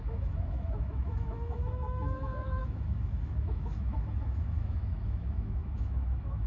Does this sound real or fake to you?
fake